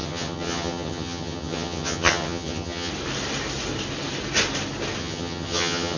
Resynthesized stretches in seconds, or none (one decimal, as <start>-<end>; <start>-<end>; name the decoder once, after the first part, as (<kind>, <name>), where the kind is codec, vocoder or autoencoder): 0.0-2.9 (vocoder, HiFi-GAN); 5.0-6.0